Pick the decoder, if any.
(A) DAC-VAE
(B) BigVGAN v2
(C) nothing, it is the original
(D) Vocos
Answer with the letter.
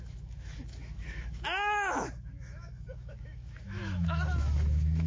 A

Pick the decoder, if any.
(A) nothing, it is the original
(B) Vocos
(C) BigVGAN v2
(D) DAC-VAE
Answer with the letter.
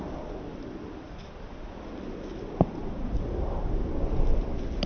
A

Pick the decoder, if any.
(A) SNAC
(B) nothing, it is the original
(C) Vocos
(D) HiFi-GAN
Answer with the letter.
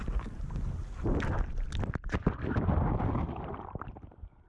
B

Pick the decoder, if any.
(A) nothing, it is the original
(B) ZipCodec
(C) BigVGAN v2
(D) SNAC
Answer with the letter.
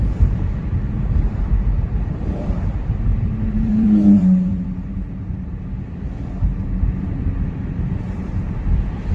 C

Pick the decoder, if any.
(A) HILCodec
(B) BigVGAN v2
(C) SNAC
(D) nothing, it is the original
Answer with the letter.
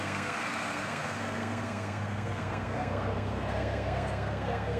C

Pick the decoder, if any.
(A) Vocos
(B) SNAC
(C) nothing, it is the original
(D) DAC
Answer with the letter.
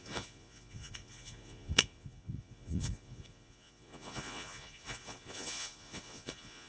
A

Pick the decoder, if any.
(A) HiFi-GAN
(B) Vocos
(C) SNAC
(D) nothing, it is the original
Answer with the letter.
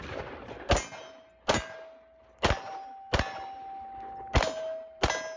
D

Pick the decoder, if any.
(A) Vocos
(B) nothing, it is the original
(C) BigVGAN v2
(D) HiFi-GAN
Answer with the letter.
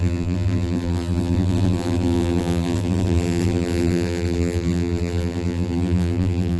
C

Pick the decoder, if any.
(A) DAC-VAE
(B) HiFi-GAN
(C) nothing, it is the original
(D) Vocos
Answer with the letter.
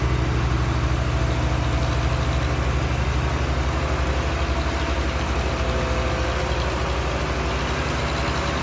C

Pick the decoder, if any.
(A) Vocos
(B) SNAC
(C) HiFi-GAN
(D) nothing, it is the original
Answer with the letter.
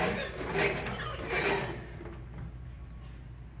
D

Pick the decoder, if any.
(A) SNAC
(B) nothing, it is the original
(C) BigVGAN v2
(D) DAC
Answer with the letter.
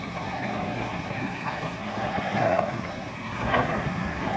A